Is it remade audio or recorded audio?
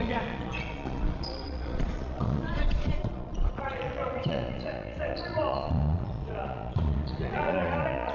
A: remade